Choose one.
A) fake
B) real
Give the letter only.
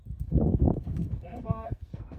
A